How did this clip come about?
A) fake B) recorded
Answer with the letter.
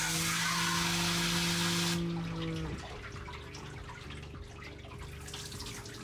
B